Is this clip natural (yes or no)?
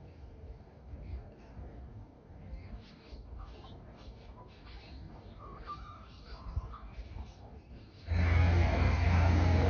no